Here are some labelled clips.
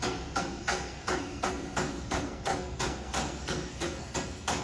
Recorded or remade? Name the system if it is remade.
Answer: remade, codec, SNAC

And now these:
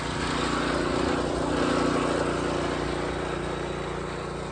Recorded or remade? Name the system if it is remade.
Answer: recorded